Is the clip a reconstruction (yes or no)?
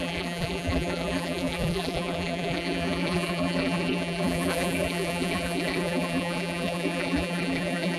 yes